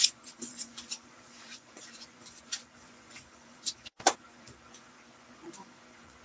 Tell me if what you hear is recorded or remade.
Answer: remade